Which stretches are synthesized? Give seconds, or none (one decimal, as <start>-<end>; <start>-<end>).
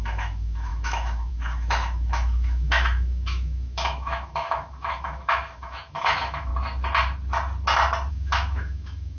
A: 0.0-6.5; 8.1-9.2